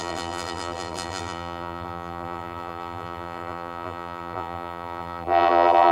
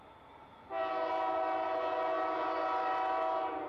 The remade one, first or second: first